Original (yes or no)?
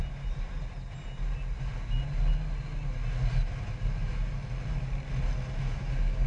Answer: yes